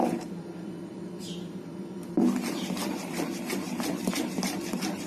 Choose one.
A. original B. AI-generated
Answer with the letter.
B